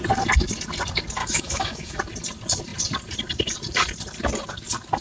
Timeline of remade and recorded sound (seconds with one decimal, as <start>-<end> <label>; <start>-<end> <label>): 0.0-1.2 recorded; 1.2-2.0 remade; 2.0-5.0 recorded